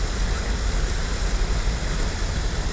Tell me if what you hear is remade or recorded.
recorded